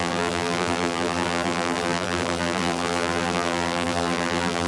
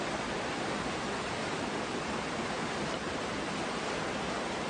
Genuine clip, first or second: second